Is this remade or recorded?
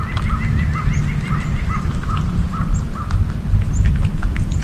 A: recorded